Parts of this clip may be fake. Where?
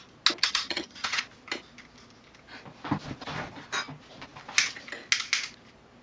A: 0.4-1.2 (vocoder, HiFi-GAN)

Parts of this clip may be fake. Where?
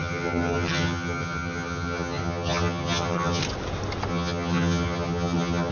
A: 0.0-3.4 (vocoder, HiFi-GAN); 4.1-5.7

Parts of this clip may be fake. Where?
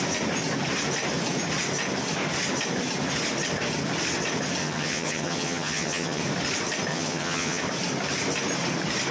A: 4.6-6.2 (vocoder, HiFi-GAN); 6.9-7.6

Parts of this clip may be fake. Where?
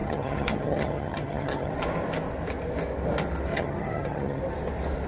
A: 0.0-1.7 (vocoder, HiFi-GAN); 3.5-4.4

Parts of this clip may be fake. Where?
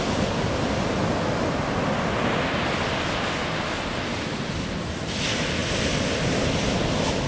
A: none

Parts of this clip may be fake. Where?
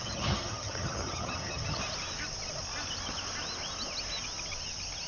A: 0.0-1.8 (vocoder, HiFi-GAN)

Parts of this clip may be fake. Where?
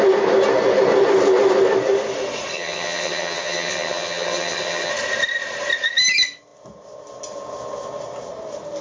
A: 2.5-4.9 (vocoder, HiFi-GAN)